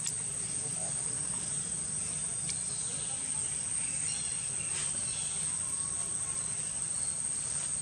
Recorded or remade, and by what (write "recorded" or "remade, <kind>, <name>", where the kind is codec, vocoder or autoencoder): recorded